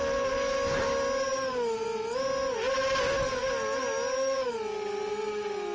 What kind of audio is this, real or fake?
real